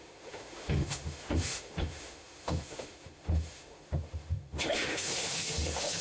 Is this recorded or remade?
remade